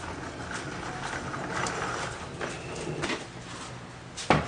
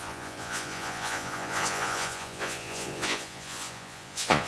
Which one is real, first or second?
first